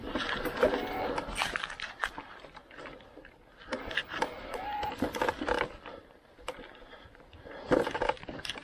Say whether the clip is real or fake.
real